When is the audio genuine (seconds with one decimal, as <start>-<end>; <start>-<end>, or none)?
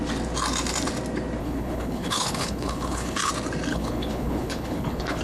0.0-1.4; 3.3-3.7